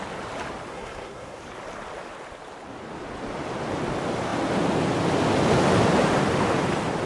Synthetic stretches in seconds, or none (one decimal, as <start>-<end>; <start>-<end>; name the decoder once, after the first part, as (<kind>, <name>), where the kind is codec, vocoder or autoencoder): 0.7-1.4 (codec, SNAC)